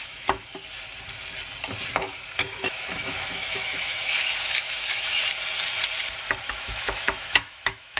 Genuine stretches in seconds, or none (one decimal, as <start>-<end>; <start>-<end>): 0.5-1.9; 5.2-6.4